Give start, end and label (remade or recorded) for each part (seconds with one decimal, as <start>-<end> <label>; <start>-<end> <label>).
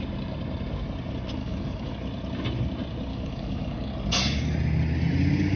0.0-1.4 recorded; 1.4-1.9 remade; 1.9-3.1 recorded; 3.1-3.9 remade; 3.9-5.6 recorded